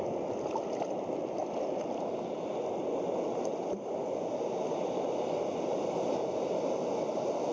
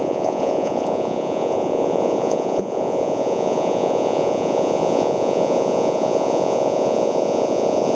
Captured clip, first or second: first